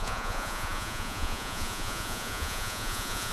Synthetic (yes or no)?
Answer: yes